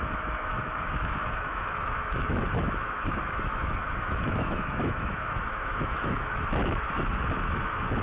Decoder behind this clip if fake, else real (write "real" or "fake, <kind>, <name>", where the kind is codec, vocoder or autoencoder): fake, autoencoder, DAC-VAE